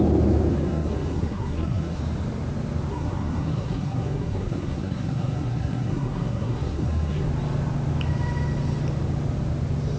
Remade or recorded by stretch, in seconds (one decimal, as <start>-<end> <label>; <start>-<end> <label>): 0.0-0.5 recorded; 0.5-2.0 remade; 2.0-2.9 recorded; 2.9-7.3 remade; 7.3-10.0 recorded

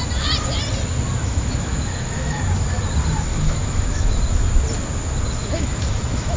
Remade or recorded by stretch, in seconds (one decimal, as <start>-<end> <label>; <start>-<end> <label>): 0.0-1.2 recorded; 1.2-2.4 remade; 2.4-3.3 recorded; 3.3-4.2 remade; 4.2-5.4 recorded; 5.4-6.4 remade

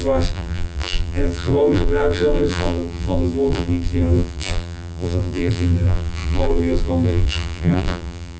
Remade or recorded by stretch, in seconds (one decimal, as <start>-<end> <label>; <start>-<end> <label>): 0.0-8.4 remade

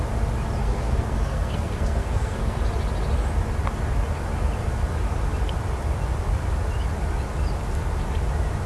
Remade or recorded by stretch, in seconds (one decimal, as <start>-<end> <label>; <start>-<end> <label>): 0.0-0.6 recorded; 0.6-2.6 remade; 2.6-8.7 recorded